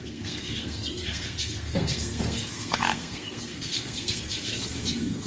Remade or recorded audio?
remade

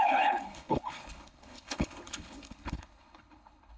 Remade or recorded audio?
remade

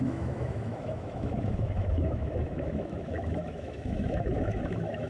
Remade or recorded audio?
remade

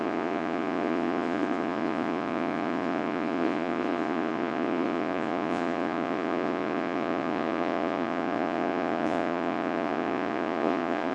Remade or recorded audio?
remade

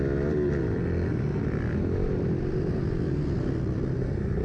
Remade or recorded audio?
recorded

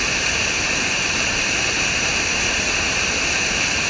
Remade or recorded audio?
remade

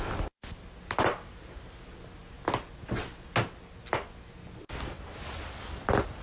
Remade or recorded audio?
recorded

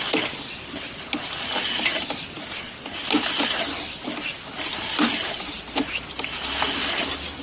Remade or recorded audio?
recorded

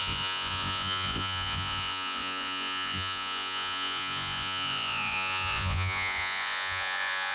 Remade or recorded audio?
remade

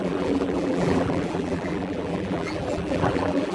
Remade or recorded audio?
remade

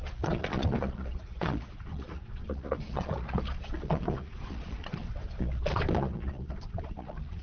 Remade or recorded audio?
remade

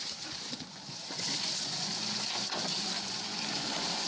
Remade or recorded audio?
remade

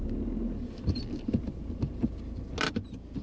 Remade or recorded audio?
recorded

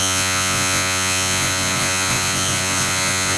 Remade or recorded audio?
remade